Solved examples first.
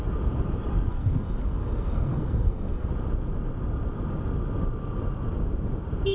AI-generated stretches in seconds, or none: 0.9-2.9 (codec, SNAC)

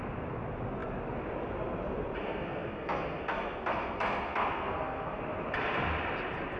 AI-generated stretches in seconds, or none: 2.2-5.2 (codec, SNAC)

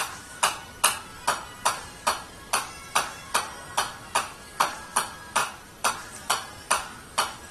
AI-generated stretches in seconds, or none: 5.4-5.9 (vocoder, BigVGAN v2)

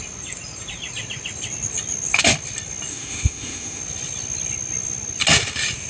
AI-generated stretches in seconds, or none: 2.9-3.8 (autoencoder, DAC-VAE)

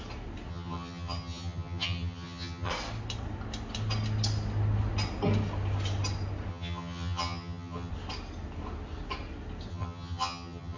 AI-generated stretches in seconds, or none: 0.5-2.7 (vocoder, HiFi-GAN); 6.5-7.9; 9.7-10.8